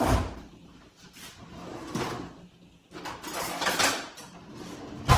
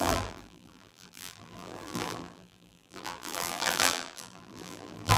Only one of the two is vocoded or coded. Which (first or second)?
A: second